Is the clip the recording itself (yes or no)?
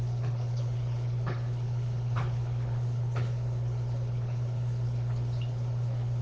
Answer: no